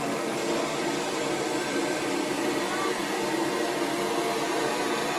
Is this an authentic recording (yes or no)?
yes